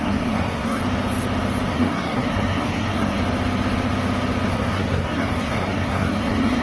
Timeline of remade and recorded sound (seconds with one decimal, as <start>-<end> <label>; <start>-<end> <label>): 0.0-0.8 remade; 0.8-1.7 recorded; 1.7-3.2 remade; 3.2-4.5 recorded; 4.5-6.6 remade